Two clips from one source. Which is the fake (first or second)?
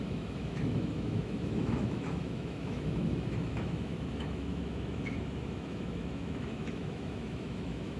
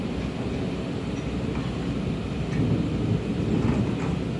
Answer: first